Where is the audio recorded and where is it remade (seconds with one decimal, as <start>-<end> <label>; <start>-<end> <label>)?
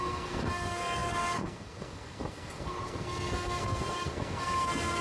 0.0-5.0 remade